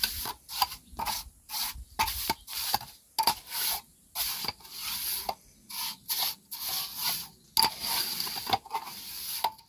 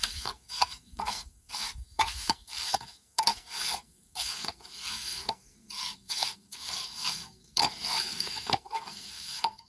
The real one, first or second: first